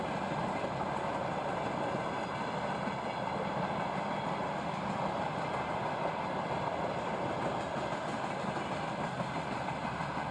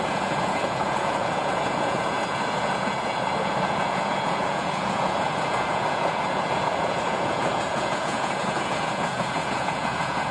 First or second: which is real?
first